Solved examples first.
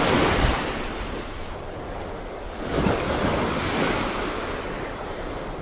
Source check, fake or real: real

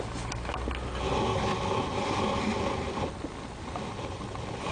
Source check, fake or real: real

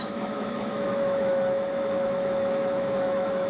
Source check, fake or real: fake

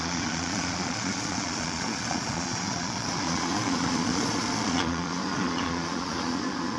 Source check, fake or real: fake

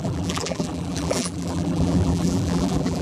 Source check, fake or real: fake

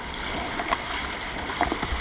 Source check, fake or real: real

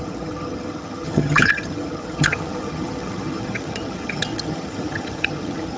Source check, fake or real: fake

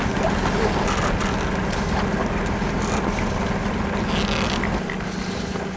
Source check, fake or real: real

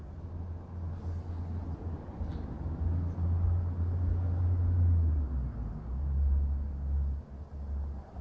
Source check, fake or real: real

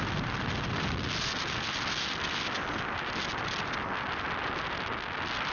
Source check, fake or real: real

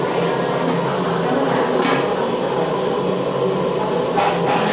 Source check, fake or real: real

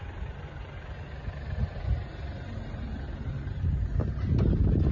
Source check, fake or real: real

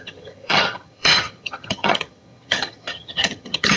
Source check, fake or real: fake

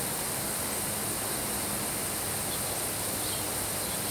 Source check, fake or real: real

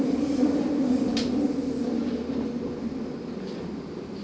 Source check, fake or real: real